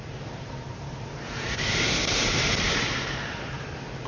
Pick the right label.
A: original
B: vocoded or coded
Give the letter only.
B